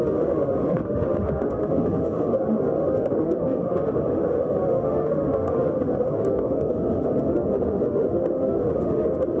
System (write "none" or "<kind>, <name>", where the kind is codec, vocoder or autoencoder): autoencoder, DAC-VAE